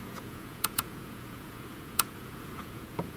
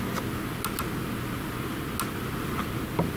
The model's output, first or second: first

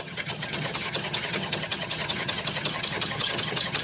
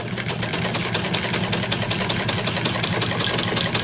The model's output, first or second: first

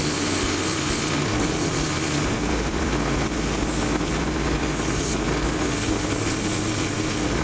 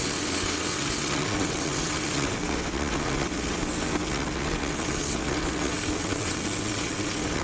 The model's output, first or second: second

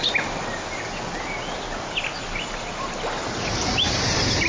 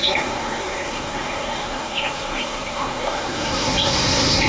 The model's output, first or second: second